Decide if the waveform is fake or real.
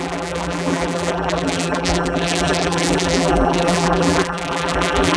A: fake